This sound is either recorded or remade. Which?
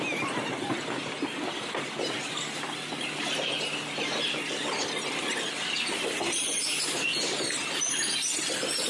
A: recorded